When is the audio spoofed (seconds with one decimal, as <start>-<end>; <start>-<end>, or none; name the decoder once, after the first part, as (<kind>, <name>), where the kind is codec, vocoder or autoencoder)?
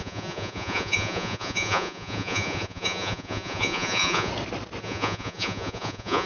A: 0.0-4.3 (vocoder, Vocos); 4.8-6.3